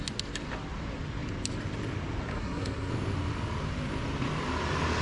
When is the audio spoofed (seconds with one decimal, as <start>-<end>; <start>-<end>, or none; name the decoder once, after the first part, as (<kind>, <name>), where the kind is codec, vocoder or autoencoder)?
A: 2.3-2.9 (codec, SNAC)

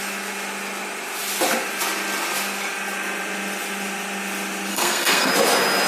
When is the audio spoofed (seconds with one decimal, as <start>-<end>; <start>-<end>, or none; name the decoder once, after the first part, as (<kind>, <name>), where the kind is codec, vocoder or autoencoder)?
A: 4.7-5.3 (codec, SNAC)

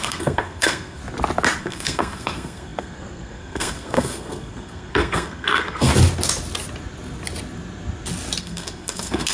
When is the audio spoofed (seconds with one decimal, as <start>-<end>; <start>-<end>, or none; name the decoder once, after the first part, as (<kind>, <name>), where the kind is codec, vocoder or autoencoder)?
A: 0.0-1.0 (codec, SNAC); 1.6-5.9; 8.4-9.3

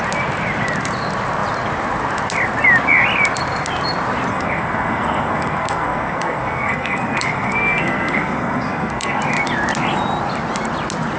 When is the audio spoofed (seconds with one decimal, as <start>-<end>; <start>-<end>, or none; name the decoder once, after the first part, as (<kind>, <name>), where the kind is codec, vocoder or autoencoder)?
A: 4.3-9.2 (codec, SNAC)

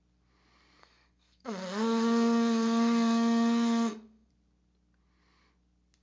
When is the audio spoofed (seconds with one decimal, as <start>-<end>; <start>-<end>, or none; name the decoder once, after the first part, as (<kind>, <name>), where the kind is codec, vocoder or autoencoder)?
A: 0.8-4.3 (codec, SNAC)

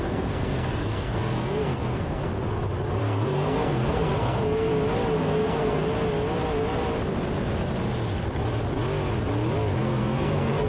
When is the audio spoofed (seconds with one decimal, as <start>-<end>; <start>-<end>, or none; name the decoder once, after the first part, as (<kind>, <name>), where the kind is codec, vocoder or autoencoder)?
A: 0.0-2.3 (codec, SNAC); 3.0-4.7; 5.2-5.8; 9.8-10.7

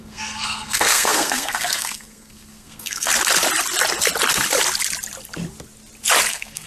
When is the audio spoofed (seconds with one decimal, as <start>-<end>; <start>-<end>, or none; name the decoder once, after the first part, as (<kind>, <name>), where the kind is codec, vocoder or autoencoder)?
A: 0.0-3.1 (codec, SNAC); 6.3-6.7